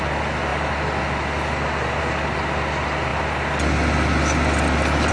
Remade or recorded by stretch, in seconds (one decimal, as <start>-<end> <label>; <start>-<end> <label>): 0.0-5.1 recorded